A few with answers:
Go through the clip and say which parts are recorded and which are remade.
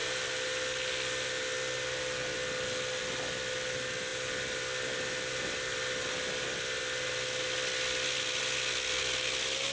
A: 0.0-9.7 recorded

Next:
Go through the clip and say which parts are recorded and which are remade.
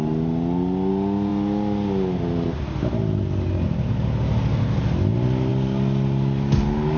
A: 0.0-7.0 recorded